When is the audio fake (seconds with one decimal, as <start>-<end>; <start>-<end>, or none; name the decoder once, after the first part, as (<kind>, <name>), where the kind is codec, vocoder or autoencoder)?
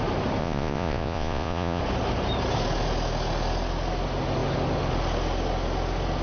0.4-1.8 (vocoder, Vocos)